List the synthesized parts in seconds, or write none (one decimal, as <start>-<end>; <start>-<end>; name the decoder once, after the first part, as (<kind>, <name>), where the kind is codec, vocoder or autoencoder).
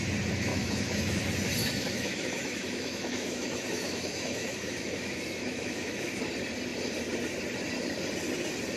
0.5-1.1 (autoencoder, DAC-VAE); 1.6-6.2